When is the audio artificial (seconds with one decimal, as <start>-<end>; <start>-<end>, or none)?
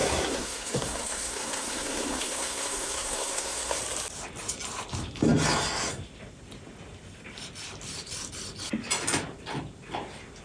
0.0-3.8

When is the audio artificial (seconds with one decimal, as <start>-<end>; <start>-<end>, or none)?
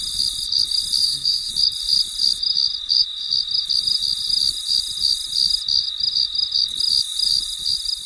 1.0-1.5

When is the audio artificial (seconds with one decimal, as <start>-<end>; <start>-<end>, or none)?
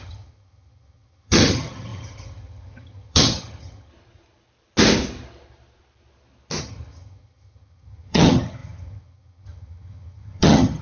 0.0-3.9; 6.6-10.8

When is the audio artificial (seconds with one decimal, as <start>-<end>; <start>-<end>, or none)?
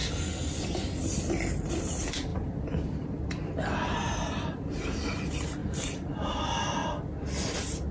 5.6-6.3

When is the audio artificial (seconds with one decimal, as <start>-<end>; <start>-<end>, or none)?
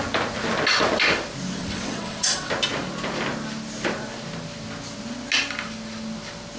1.6-2.5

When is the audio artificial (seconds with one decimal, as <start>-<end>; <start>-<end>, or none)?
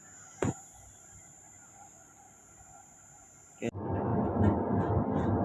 none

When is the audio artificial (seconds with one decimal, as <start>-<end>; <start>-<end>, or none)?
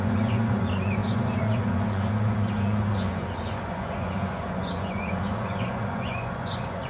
0.0-6.9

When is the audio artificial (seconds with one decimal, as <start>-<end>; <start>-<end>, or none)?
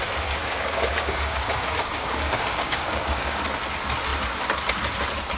0.4-3.4